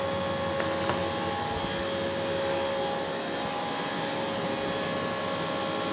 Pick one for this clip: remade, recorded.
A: recorded